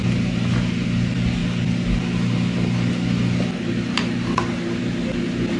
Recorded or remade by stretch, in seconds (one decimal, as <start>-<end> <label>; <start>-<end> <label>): 0.0-5.6 recorded